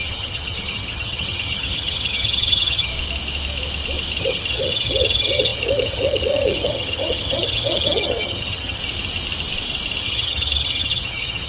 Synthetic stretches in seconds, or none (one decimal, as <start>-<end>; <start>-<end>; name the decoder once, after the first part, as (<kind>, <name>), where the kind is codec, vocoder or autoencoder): 0.0-2.9 (vocoder, HiFi-GAN); 4.2-8.8; 10.0-11.5